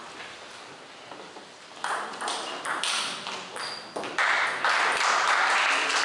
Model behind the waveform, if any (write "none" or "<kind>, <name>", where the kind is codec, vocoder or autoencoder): none